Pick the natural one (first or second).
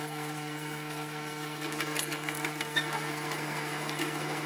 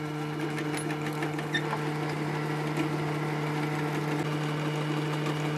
second